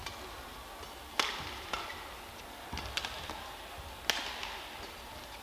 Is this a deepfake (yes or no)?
no